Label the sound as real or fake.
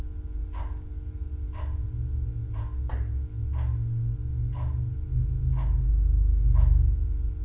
real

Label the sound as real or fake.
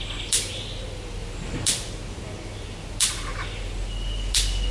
real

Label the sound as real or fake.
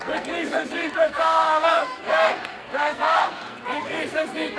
fake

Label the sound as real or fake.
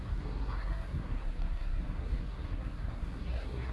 fake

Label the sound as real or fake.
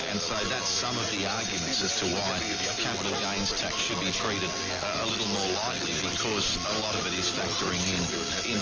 real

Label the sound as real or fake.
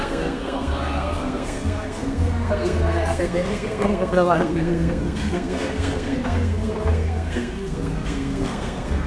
fake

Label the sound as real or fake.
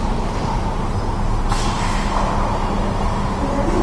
real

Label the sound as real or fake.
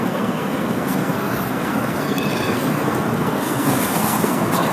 fake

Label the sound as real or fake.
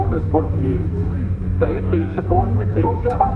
fake